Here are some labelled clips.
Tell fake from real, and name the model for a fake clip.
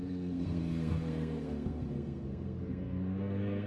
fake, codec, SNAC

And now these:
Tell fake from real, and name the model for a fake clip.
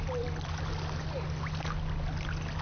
real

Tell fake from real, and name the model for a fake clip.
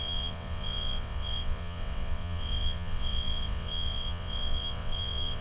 fake, vocoder, WaveNeXt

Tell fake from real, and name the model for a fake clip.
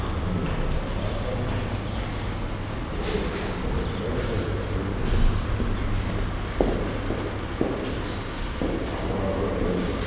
real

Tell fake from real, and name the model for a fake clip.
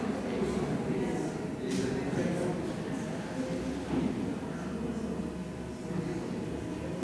real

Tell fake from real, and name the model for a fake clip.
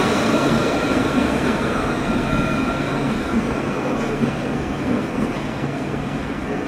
fake, codec, SNAC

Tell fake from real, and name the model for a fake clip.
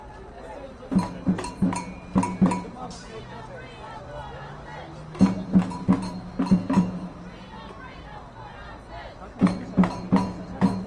real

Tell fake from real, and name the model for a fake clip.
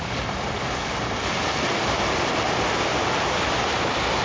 real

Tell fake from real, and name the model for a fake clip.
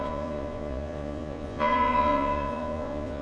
fake, vocoder, Vocos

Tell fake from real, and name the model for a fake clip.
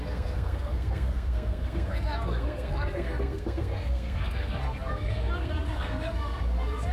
fake, codec, SNAC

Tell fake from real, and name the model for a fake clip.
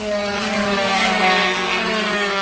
fake, codec, SNAC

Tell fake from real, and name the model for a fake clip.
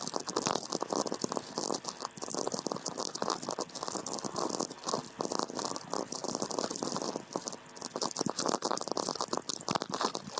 real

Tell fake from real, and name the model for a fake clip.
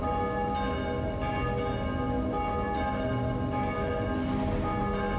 real